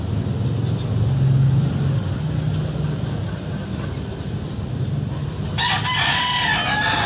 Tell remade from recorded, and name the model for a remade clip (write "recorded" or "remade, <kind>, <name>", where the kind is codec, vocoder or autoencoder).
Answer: recorded